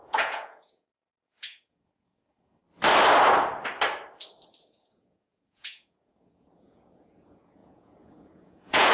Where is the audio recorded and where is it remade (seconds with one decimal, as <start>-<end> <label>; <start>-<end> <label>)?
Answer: 0.0-2.6 remade; 2.6-4.6 recorded; 4.6-8.9 remade